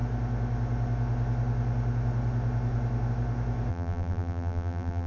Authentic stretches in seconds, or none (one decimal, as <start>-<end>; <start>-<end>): 0.0-3.7